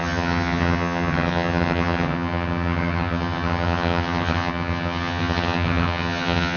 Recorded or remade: remade